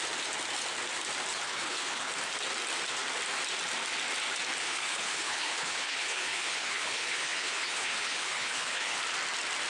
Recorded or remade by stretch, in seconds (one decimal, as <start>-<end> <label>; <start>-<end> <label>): 0.0-1.3 recorded; 1.3-2.1 remade; 2.1-4.6 recorded; 4.6-9.0 remade; 9.0-9.7 recorded